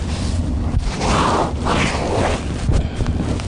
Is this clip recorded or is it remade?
recorded